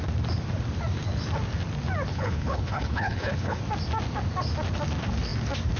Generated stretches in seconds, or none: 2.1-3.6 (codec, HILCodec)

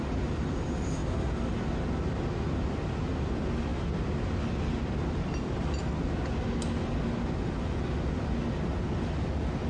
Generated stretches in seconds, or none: none

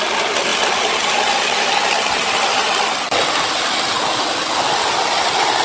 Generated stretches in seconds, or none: none

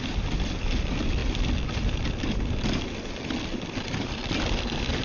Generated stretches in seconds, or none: none

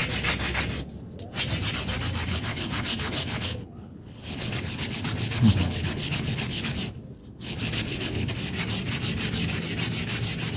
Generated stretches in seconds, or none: 2.3-6.7 (codec, HILCodec); 7.2-8.3